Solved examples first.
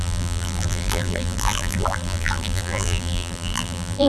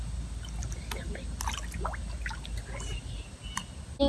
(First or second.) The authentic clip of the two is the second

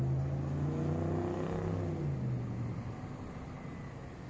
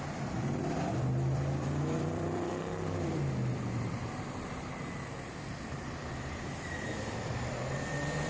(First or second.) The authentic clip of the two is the first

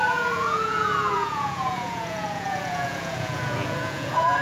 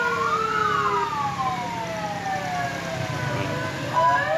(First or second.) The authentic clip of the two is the second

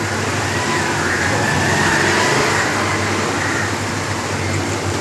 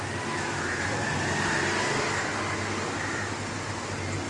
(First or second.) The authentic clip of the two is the second